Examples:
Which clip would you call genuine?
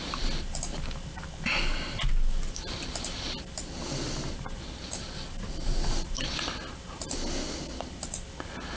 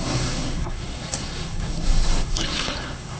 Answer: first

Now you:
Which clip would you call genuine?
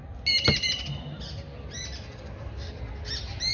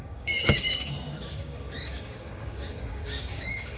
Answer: first